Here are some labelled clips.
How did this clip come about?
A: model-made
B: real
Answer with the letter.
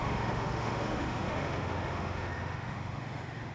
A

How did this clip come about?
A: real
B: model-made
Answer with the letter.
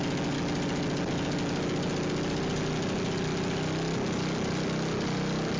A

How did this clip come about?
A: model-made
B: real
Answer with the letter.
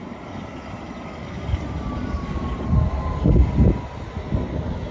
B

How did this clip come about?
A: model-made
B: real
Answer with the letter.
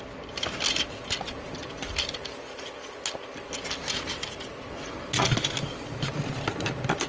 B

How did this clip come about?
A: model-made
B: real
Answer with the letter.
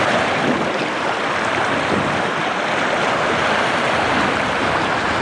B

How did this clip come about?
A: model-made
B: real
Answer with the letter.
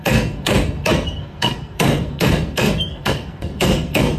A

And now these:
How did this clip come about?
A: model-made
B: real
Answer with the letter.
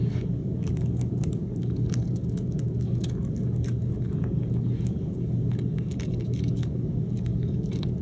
A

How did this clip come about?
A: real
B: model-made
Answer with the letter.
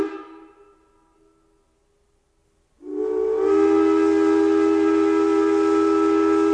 A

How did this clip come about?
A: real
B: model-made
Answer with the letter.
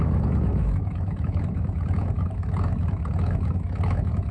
B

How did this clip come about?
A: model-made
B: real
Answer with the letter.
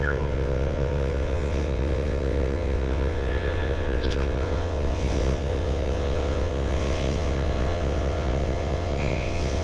A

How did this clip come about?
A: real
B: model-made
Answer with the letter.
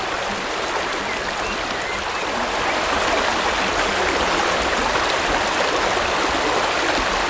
A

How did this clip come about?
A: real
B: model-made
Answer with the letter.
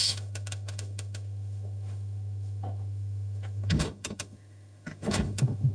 B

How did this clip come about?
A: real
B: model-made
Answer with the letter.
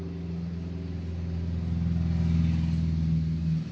A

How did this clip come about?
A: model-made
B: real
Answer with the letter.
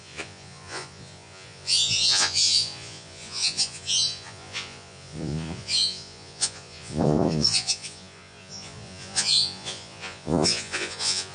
A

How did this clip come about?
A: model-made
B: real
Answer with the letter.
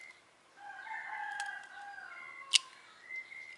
B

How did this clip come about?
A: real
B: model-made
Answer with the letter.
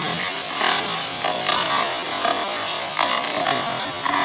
A